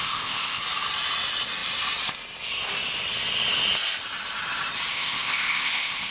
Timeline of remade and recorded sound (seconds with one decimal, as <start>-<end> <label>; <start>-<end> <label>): 0.0-0.6 remade; 0.6-4.9 recorded; 4.9-6.1 remade